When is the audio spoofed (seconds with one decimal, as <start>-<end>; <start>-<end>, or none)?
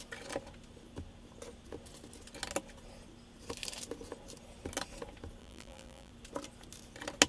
5.4-6.1